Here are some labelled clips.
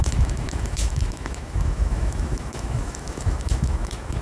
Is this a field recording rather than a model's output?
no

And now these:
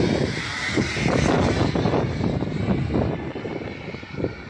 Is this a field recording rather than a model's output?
yes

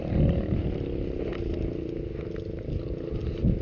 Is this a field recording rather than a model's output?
yes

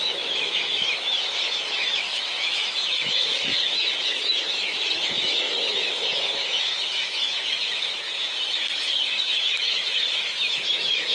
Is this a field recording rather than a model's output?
no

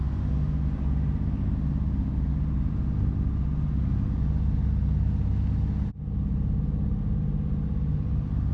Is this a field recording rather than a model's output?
yes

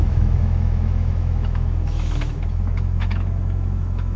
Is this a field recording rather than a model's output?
no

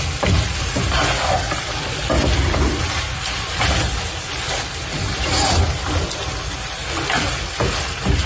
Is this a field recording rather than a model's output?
yes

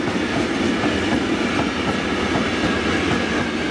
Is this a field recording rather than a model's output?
yes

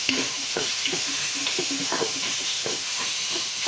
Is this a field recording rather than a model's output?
no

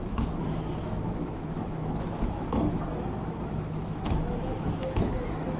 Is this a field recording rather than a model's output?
no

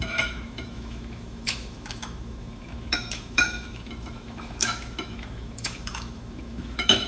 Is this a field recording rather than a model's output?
no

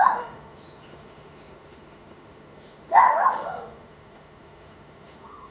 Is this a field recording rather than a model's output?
no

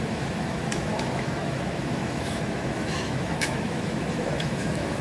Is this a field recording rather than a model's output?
no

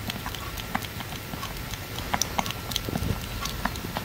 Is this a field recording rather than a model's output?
yes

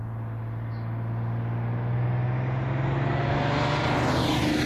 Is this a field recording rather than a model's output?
yes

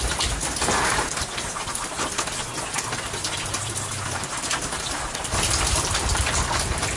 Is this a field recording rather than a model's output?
yes